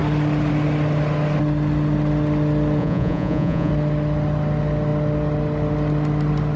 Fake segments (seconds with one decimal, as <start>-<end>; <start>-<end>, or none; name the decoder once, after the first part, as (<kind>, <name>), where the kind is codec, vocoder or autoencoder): 2.8-3.7 (vocoder, Vocos)